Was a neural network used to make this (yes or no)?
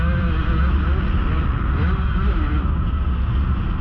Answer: no